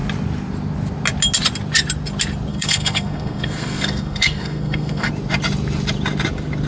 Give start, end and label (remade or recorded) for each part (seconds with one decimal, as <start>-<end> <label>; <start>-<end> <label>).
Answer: 0.0-2.5 recorded; 2.5-5.1 remade; 5.1-6.7 recorded